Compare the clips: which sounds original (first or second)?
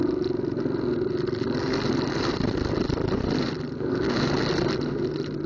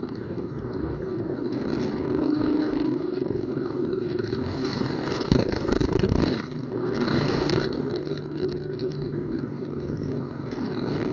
first